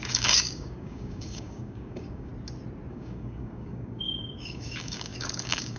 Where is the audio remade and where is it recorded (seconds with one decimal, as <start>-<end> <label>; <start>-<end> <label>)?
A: 0.0-2.3 remade; 2.3-2.9 recorded; 2.9-5.8 remade